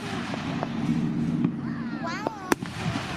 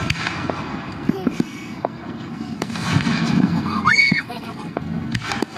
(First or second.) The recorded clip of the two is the first